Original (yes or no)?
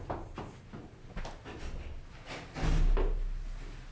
yes